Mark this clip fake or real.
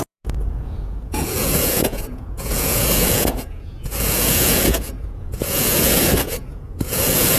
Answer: fake